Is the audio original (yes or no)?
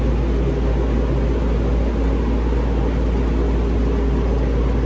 yes